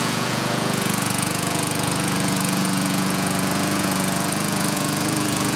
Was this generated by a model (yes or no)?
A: yes